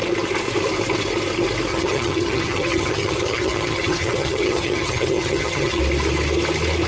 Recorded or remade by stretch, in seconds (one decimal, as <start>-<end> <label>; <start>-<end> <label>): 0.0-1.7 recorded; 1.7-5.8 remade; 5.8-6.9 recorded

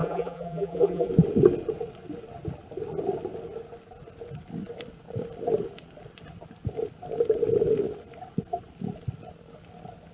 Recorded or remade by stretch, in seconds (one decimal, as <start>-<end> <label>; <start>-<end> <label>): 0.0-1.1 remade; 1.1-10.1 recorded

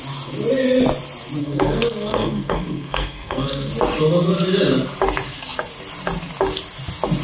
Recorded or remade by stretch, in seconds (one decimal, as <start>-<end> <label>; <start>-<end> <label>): 0.0-1.4 recorded; 1.4-3.7 remade; 3.7-7.2 recorded

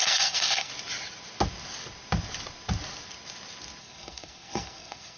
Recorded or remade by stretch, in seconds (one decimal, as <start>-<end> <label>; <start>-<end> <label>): 0.0-0.7 remade; 0.7-3.8 recorded; 3.8-5.2 remade

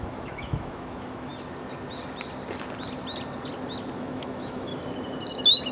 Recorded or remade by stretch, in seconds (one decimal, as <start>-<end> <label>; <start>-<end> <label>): 0.0-1.3 remade; 1.3-4.0 recorded; 4.0-4.7 remade; 4.7-5.7 recorded